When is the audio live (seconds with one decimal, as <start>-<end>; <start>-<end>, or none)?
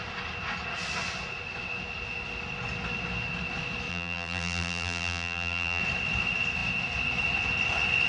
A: 0.0-3.9; 5.8-8.1